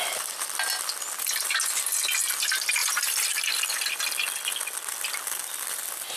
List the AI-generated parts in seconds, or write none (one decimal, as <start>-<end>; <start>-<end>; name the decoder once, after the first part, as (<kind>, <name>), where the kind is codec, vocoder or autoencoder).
2.8-3.5 (vocoder, BigVGAN v2)